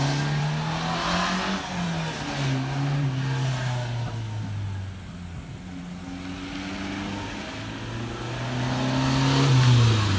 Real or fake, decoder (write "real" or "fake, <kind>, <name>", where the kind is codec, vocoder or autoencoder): real